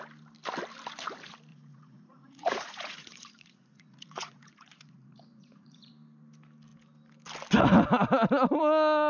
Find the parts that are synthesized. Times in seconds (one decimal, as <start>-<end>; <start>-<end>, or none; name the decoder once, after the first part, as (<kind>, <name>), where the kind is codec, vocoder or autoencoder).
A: 1.5-5.9 (vocoder, Vocos)